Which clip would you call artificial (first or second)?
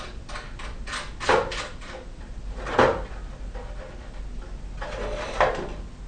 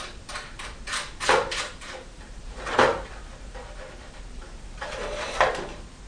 second